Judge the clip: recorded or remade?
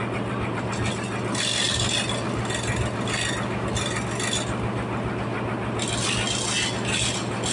recorded